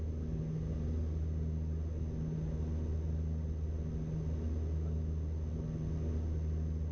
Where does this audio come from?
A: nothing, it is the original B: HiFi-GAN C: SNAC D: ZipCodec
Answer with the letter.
A